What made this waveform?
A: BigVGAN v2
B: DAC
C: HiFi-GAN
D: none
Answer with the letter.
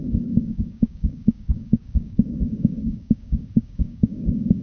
B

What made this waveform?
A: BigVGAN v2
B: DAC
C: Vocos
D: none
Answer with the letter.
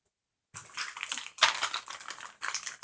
D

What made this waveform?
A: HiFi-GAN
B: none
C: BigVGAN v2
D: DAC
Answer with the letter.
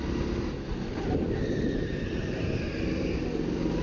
B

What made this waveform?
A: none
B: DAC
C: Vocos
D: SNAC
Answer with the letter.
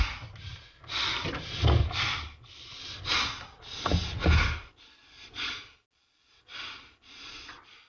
A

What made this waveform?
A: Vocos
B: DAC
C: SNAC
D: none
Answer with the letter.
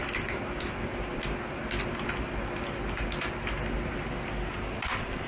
D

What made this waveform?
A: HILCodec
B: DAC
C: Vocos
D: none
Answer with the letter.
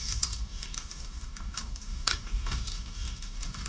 B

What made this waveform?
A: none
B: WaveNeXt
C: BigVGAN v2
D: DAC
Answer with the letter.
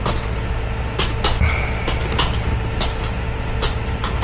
A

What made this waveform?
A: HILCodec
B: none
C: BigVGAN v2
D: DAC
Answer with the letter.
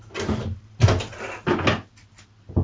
B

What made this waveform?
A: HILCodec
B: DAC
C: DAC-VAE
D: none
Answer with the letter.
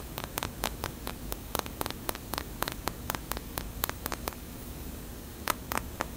B